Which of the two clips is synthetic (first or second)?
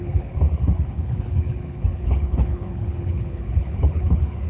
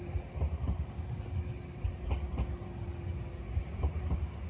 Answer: first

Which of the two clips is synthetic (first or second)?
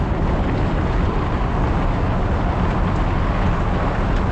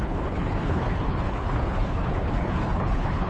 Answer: second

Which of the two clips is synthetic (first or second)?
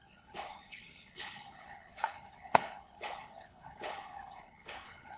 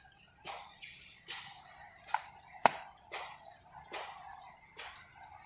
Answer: first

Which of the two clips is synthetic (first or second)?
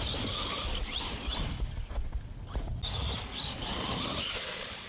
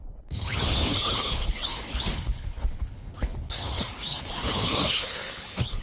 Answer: second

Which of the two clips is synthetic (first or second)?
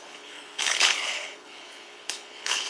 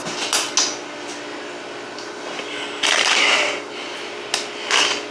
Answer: first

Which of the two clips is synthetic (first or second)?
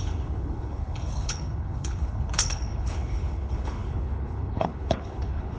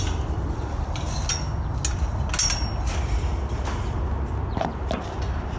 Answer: first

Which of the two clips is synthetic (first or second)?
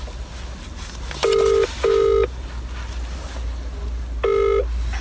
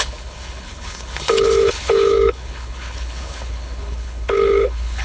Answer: second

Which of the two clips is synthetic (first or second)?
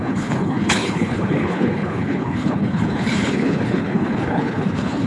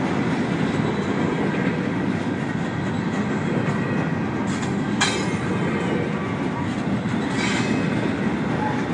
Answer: first